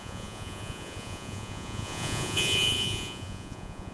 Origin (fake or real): fake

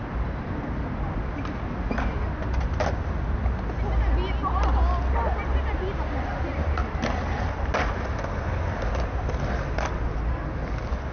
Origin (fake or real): real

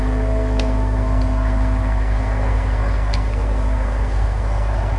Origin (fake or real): fake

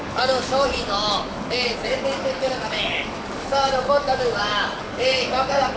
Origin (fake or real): fake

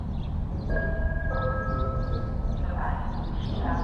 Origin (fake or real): fake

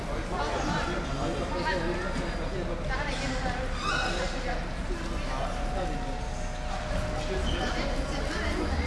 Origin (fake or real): real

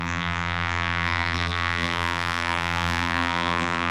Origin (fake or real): fake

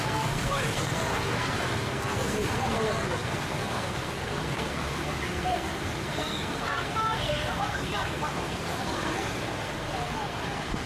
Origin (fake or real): fake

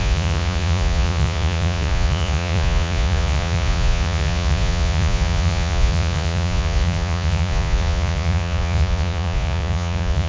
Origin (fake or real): fake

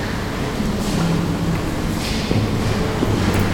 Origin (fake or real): real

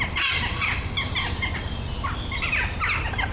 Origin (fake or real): real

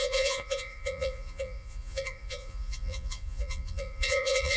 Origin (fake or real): fake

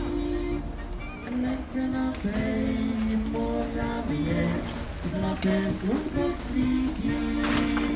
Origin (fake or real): real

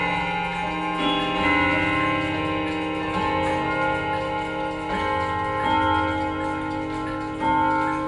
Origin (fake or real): real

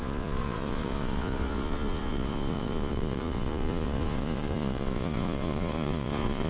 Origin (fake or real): fake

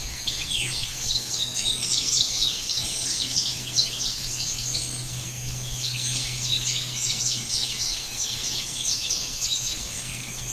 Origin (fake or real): fake